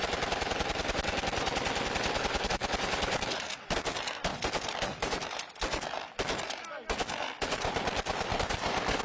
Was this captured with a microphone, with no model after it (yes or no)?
no